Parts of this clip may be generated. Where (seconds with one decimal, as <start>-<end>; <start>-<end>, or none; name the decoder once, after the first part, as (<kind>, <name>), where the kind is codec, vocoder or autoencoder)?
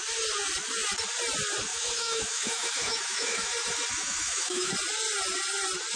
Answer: 1.7-3.5 (autoencoder, DAC-VAE); 4.0-4.7